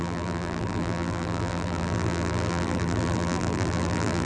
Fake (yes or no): yes